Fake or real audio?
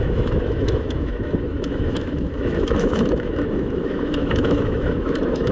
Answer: fake